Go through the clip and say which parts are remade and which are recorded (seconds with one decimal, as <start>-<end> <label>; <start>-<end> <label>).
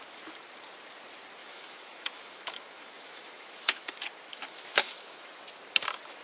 0.0-1.4 recorded; 1.4-3.9 remade; 3.9-4.3 recorded; 4.3-5.3 remade; 5.3-6.2 recorded